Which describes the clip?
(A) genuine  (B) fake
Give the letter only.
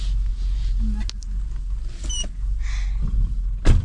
A